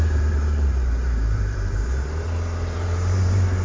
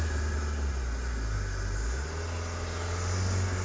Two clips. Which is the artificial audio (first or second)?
first